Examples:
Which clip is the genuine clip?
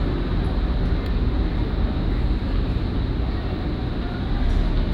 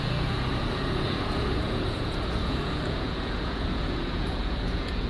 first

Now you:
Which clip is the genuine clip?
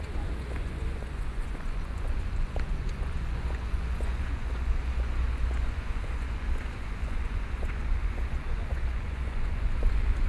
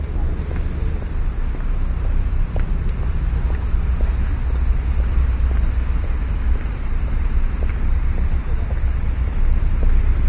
second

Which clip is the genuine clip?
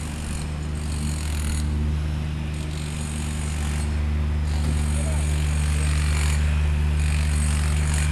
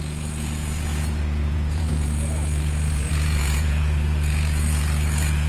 first